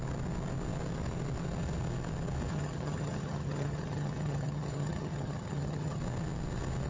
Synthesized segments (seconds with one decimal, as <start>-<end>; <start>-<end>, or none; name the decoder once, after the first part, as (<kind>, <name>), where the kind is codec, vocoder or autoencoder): 2.5-6.0 (vocoder, HiFi-GAN)